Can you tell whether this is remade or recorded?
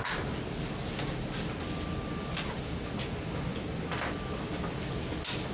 recorded